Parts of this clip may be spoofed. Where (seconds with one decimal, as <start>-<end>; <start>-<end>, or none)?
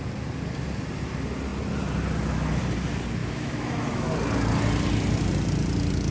3.2-4.1